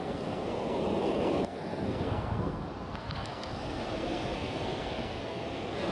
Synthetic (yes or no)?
yes